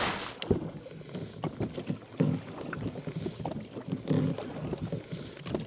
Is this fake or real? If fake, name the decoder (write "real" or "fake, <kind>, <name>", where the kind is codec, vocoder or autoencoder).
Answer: real